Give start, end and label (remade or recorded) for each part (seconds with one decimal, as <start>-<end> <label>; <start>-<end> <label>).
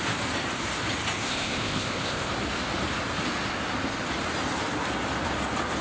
0.0-1.2 recorded; 1.2-2.3 remade; 2.3-5.8 recorded